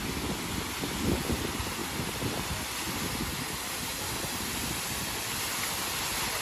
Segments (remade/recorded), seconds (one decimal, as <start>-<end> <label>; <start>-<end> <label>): 0.0-6.4 recorded